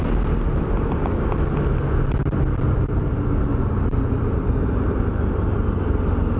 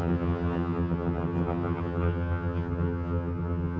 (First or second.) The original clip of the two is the first